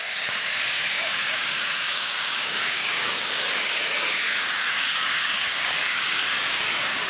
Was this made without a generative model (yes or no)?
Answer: no